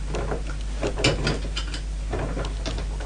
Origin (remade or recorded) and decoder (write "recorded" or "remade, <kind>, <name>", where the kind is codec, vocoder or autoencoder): recorded